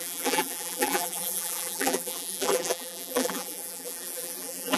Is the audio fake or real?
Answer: fake